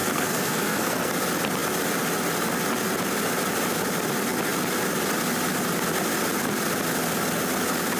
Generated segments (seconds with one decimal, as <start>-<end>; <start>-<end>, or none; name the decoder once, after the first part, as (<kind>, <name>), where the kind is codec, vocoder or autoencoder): 0.0-1.1 (codec, SNAC)